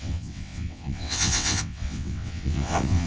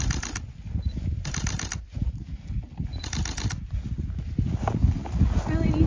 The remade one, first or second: first